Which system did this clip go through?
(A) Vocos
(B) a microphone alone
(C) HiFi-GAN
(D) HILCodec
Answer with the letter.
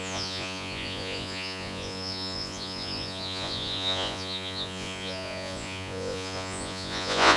A